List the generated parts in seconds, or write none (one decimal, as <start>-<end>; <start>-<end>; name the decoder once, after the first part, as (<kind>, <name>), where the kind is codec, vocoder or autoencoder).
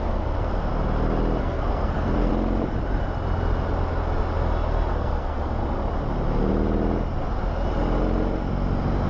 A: 0.0-0.7 (codec, SNAC); 1.4-2.3; 4.9-5.6